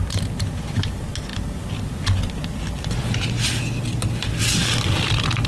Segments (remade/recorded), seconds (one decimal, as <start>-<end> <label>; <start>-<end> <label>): 0.0-5.5 recorded